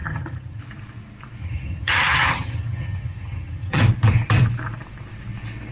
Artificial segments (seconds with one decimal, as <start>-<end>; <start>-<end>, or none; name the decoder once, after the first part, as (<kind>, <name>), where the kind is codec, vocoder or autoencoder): 0.0-0.6 (vocoder, HiFi-GAN); 1.4-3.8